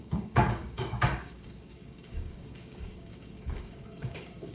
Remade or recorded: remade